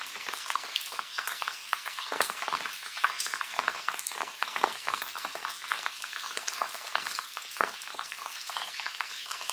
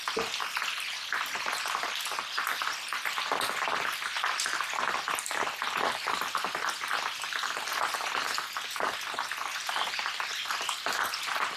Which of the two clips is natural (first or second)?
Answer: second